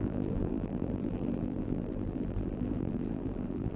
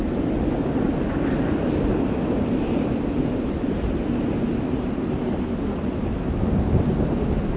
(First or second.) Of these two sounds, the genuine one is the second